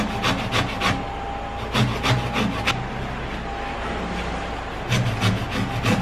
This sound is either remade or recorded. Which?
recorded